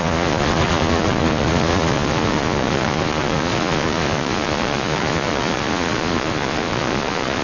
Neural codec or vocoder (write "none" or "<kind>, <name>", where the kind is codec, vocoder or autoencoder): vocoder, Vocos